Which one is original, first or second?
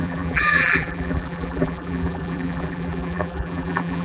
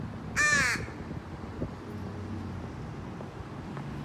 second